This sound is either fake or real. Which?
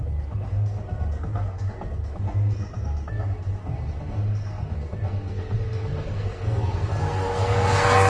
fake